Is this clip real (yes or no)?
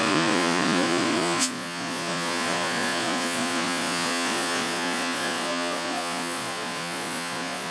no